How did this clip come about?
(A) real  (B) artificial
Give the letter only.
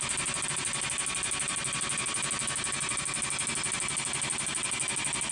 A